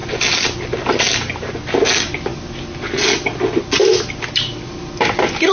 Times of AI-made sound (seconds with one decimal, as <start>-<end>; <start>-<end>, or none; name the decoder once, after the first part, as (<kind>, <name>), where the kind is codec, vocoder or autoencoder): none